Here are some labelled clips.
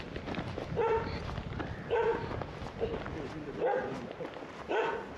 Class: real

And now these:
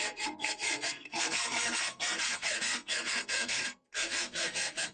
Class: fake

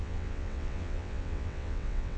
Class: fake